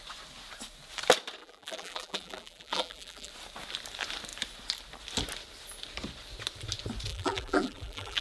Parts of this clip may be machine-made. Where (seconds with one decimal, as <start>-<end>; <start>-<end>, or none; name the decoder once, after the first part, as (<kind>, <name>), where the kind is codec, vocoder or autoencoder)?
1.4-3.3 (vocoder, BigVGAN v2); 7.1-8.2